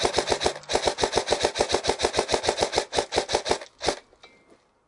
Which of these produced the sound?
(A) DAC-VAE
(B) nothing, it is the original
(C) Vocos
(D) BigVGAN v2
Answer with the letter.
B